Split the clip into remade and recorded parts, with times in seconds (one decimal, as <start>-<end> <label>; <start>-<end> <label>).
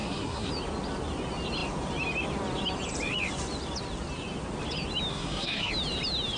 0.0-0.5 remade; 0.5-5.1 recorded; 5.1-5.7 remade; 5.7-6.4 recorded